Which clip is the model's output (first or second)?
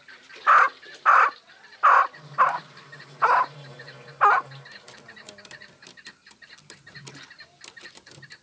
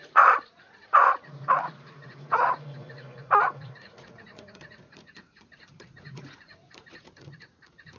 second